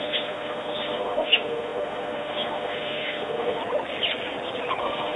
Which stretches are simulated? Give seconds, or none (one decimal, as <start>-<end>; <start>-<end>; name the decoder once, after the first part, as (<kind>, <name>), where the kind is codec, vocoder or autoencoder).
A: 0.0-3.6 (autoencoder, DAC-VAE); 4.8-5.2